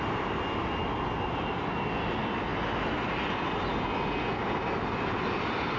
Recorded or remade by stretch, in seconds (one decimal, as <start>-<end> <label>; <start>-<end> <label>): 0.0-5.8 recorded